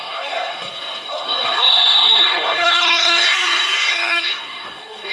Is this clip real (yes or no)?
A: no